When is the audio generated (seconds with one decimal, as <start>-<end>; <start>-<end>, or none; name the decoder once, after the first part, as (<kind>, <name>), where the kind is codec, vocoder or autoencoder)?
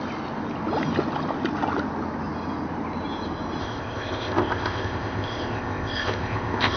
3.6-6.8 (codec, ZipCodec)